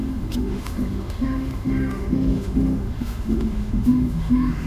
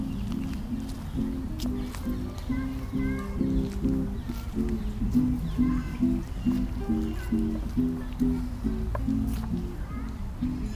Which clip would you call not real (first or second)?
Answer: first